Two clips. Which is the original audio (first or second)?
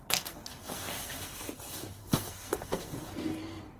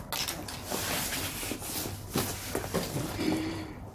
second